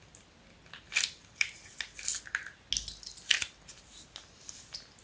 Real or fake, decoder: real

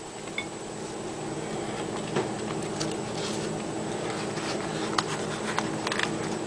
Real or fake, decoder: real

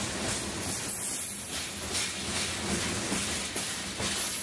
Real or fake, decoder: real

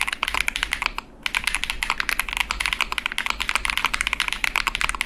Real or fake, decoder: real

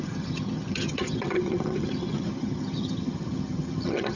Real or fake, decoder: fake, vocoder, HiFi-GAN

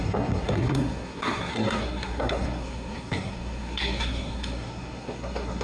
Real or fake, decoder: fake, codec, SNAC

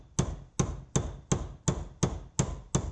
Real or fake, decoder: real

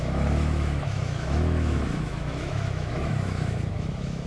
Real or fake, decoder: fake, autoencoder, DAC-VAE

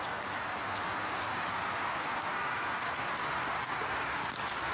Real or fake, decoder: real